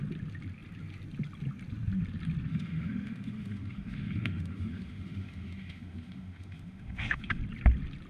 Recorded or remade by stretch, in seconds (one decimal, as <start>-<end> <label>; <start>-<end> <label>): 0.0-2.5 recorded; 2.5-7.4 remade; 7.4-8.1 recorded